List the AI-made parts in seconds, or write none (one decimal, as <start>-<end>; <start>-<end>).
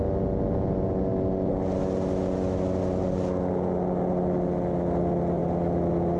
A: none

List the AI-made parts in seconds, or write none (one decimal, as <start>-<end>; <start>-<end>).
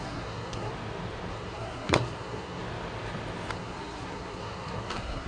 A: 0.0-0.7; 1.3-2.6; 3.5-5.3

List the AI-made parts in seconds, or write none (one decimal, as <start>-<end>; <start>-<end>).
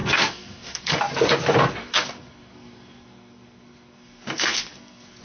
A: 0.0-1.0; 1.8-5.2